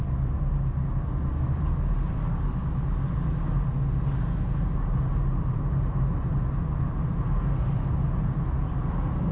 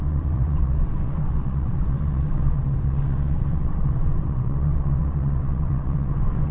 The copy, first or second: second